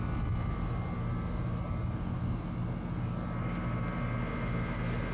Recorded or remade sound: recorded